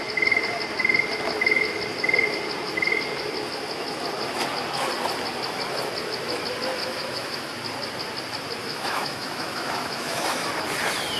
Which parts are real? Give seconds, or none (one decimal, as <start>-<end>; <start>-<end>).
0.0-6.8; 7.5-8.6; 10.5-11.2